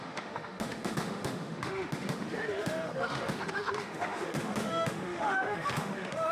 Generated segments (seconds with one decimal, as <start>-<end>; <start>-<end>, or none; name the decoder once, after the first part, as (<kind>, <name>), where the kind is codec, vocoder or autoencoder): 0.0-6.3 (autoencoder, DAC-VAE)